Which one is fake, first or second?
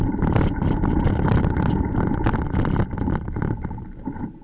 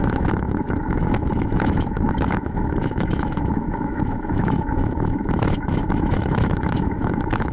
second